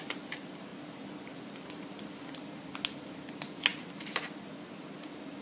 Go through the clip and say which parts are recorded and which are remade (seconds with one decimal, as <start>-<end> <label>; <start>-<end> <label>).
0.0-3.7 recorded; 3.7-4.2 remade; 4.2-5.4 recorded